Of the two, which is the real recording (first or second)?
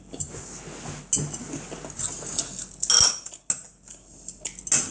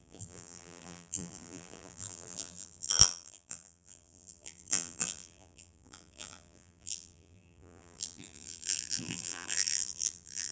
first